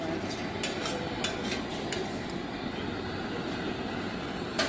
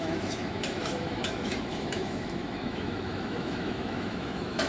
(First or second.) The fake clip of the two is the second